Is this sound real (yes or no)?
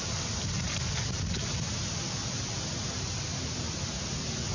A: yes